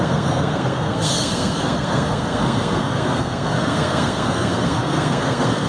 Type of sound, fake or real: fake